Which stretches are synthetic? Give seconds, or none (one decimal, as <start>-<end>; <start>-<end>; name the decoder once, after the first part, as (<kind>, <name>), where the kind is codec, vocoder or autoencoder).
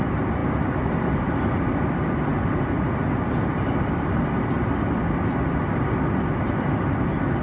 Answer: none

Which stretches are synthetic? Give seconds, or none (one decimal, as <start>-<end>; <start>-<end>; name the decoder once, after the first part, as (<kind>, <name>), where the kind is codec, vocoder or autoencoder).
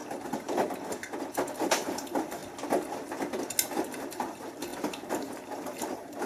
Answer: 1.5-2.4 (vocoder, BigVGAN v2); 3.7-6.3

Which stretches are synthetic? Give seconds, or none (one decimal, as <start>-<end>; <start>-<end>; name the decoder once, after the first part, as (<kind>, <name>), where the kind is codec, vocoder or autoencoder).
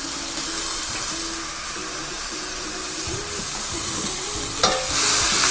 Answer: 1.8-4.2 (vocoder, BigVGAN v2)